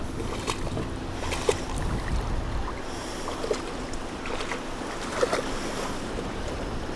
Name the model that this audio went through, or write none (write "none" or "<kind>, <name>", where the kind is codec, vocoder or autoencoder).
none